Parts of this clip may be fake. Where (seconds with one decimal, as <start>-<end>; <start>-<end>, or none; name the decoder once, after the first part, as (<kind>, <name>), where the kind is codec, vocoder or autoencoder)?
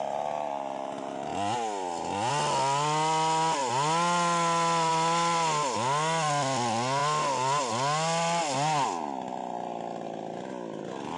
none